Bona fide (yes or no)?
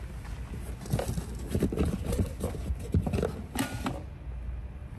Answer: yes